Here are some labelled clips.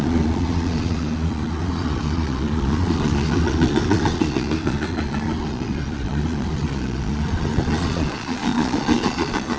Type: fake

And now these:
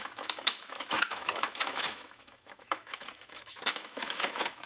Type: fake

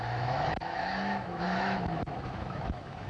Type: fake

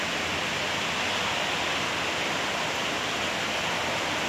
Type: real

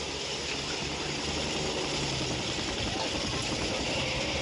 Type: real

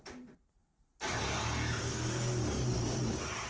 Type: real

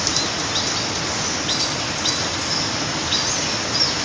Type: real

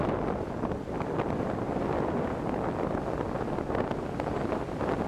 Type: real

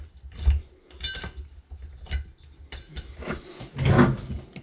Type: real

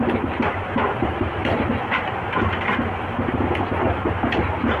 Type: real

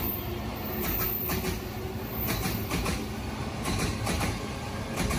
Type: real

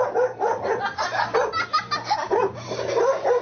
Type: real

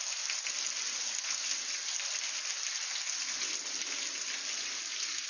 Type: real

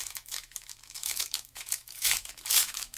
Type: fake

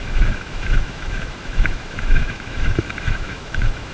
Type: fake